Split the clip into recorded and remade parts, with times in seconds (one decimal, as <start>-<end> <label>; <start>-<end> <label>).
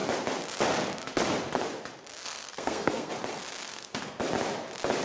0.0-2.2 recorded; 2.2-3.1 remade; 3.1-3.6 recorded; 3.6-4.2 remade; 4.2-5.0 recorded